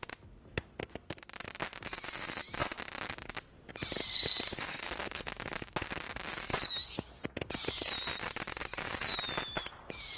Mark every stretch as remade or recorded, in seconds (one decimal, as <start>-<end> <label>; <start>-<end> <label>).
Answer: 0.0-4.7 recorded; 4.7-5.3 remade; 5.3-10.2 recorded